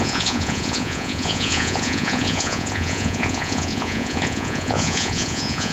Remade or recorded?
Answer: remade